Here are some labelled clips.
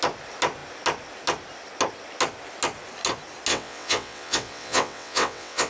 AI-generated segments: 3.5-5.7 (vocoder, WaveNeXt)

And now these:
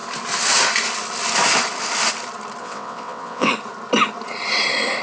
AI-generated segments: 2.6-3.5 (vocoder, WaveNeXt)

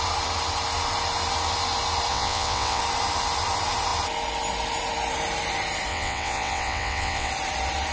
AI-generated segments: 2.1-2.8 (vocoder, WaveNeXt); 5.9-7.3